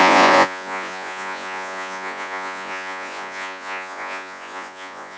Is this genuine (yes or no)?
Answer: no